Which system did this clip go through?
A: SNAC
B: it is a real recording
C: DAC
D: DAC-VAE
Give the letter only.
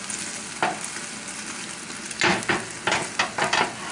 B